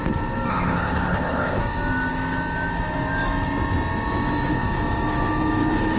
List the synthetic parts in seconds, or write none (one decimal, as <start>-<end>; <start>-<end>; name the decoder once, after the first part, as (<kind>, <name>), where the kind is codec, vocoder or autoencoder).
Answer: 0.5-1.6 (codec, ZipCodec)